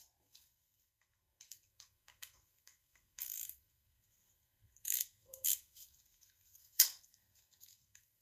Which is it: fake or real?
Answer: fake